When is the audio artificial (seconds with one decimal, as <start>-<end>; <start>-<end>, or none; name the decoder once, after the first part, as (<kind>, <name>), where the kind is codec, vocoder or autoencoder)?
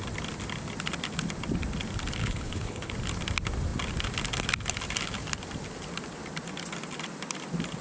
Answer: 2.2-2.9 (codec, HILCodec)